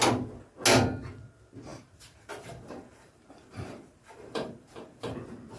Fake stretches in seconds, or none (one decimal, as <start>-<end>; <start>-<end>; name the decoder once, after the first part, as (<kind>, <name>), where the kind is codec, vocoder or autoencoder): 1.7-5.1 (vocoder, BigVGAN v2)